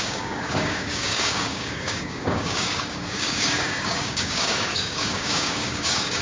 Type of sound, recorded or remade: remade